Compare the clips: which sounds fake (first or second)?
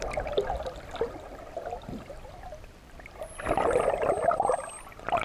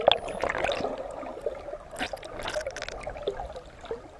first